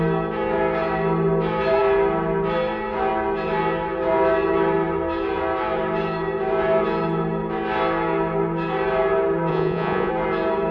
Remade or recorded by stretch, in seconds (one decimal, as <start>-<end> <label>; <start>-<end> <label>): 0.0-9.5 recorded; 9.5-10.1 remade; 10.1-10.7 recorded